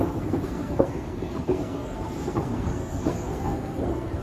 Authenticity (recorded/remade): remade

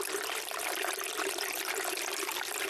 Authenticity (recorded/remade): recorded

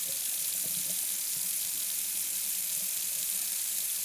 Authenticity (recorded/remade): recorded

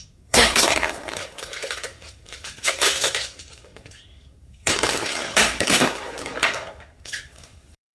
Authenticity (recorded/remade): remade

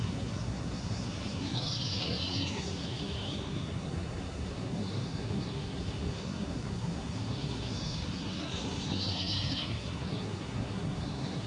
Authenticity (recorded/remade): remade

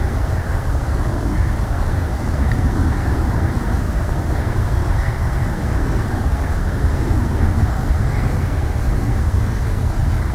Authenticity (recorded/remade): remade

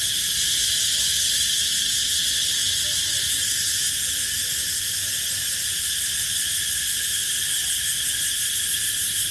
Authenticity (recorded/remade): recorded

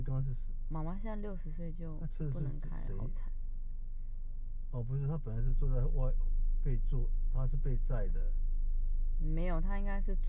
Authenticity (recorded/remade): recorded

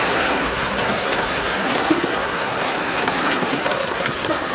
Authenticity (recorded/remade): remade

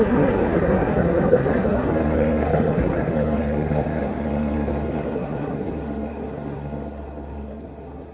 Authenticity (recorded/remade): remade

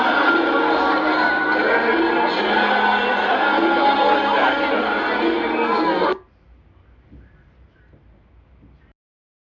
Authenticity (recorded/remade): recorded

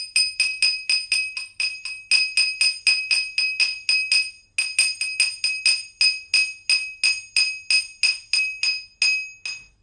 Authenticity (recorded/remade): recorded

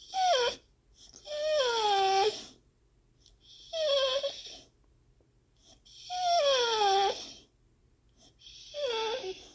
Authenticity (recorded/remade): recorded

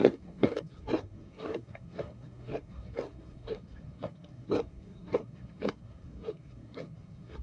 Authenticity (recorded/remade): remade